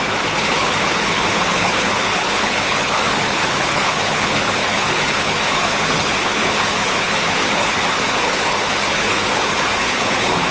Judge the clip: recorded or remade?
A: remade